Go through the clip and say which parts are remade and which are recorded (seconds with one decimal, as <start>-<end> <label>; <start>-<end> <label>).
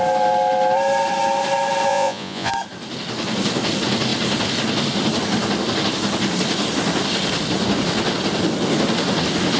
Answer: 0.0-1.9 recorded; 1.9-2.5 remade; 2.5-9.6 recorded